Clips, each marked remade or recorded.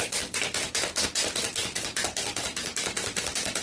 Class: remade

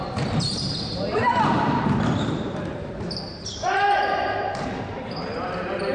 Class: remade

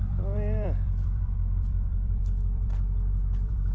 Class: remade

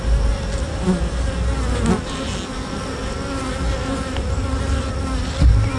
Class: recorded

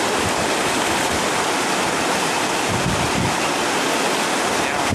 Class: recorded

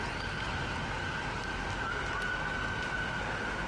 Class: recorded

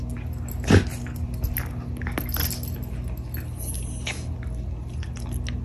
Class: recorded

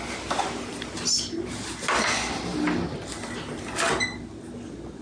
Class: recorded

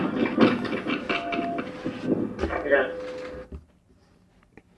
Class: recorded